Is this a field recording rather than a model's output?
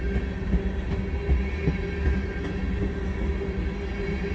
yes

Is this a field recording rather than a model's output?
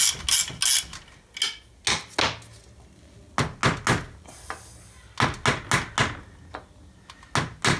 yes